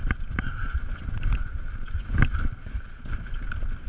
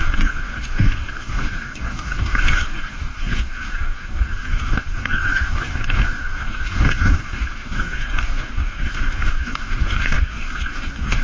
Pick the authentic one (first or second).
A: first